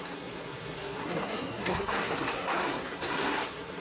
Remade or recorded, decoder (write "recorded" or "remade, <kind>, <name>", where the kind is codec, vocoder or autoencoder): remade, codec, SNAC